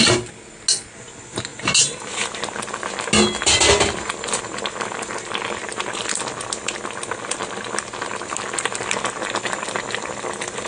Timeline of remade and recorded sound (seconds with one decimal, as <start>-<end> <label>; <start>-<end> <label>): 0.0-10.7 recorded